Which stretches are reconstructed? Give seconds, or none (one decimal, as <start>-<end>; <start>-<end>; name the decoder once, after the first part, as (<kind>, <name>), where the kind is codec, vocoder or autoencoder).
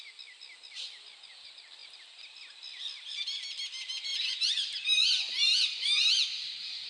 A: 4.1-5.0 (vocoder, BigVGAN v2)